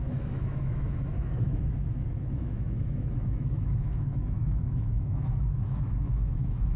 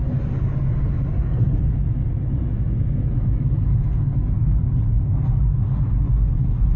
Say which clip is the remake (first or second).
first